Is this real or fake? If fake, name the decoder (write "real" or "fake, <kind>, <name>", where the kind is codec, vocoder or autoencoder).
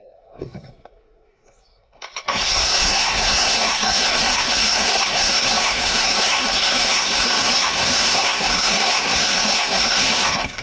fake, codec, SNAC